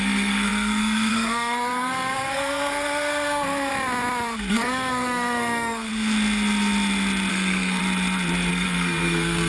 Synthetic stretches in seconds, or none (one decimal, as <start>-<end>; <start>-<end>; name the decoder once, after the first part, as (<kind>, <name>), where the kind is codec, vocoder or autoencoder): 0.0-3.7 (codec, SNAC); 4.5-5.9; 7.3-7.8; 8.5-9.5